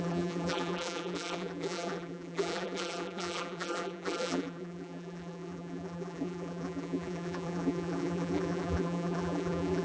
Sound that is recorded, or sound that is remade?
remade